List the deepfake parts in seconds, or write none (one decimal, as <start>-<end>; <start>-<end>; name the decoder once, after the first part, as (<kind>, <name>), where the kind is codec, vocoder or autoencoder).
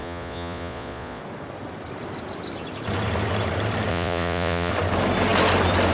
0.0-1.2 (vocoder, Vocos); 3.9-4.7